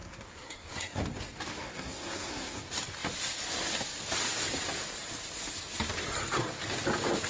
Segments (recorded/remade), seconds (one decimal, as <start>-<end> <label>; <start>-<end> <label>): 0.0-1.0 remade; 1.0-1.5 recorded; 1.5-2.6 remade; 2.6-7.3 recorded